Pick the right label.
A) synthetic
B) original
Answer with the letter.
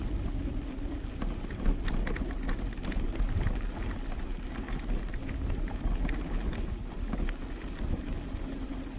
B